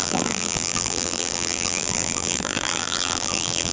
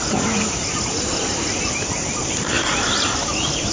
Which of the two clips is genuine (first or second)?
second